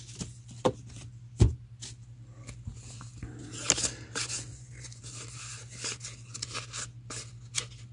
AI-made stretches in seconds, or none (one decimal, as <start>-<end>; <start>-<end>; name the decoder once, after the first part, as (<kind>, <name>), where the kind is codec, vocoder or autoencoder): 4.5-5.0 (vocoder, Vocos)